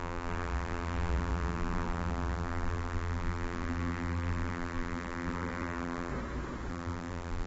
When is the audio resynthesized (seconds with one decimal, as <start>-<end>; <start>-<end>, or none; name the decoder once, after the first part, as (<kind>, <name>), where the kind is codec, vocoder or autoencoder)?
0.0-6.1 (vocoder, BigVGAN v2); 6.7-7.5

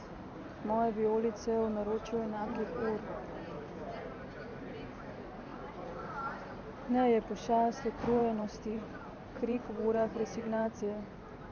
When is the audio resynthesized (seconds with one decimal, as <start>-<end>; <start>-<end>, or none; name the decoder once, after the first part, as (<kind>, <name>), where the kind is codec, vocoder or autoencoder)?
5.5-6.1 (vocoder, BigVGAN v2); 8.2-10.8

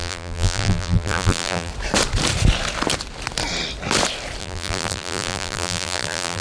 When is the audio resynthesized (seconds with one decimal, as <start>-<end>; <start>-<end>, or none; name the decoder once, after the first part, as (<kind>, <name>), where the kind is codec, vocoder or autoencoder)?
0.0-1.7 (vocoder, BigVGAN v2); 4.4-6.4

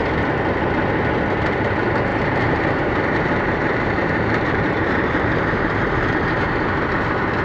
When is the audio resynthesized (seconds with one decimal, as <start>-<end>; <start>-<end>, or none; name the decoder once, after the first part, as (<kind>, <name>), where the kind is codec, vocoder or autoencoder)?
2.1-6.5 (vocoder, BigVGAN v2)